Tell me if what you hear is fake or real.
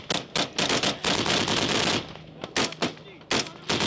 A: real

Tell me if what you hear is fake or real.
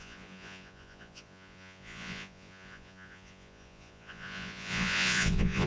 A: fake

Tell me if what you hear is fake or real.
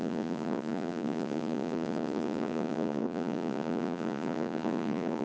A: fake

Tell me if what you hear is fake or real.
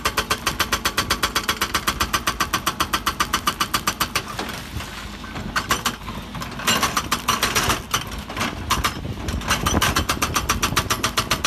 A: real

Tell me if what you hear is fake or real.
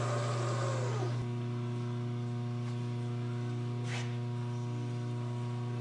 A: real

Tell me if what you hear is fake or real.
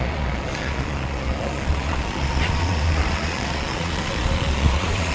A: fake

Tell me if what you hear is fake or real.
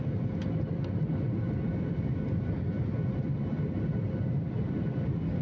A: real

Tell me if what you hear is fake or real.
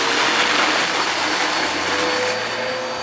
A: real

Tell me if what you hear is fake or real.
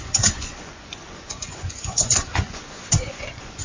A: fake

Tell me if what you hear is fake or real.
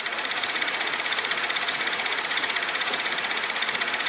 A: fake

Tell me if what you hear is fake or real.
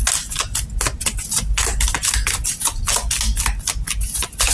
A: real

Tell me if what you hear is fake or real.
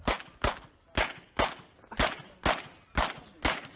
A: real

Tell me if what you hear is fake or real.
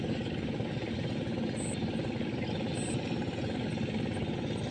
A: real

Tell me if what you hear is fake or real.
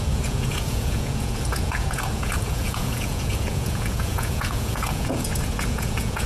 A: fake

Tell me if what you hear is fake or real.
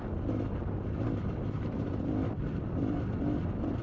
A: real